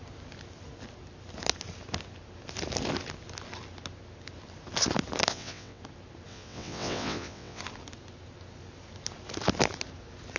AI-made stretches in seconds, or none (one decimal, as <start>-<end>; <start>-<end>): 5.3-5.8; 6.3-7.6